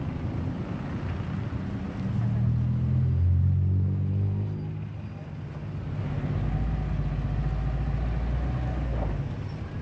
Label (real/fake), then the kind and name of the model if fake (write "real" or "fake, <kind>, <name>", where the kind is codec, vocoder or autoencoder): real